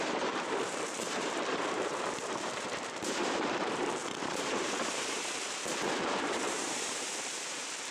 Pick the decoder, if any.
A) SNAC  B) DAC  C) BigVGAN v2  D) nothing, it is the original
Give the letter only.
C